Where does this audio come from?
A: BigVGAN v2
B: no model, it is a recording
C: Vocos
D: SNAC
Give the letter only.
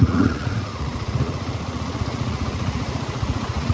C